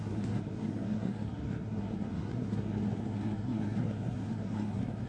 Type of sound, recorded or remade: remade